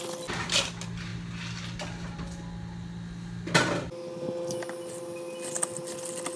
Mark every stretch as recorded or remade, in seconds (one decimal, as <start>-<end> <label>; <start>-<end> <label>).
0.0-6.4 recorded